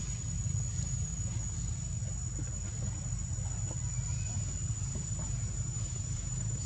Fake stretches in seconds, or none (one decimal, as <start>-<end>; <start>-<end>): 0.7-1.1; 4.8-6.7